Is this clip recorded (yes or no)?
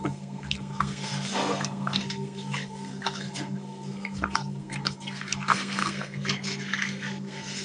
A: no